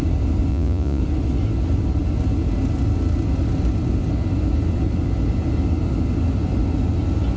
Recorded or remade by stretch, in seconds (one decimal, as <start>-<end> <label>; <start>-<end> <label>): 0.0-0.5 recorded; 0.5-1.0 remade; 1.0-7.4 recorded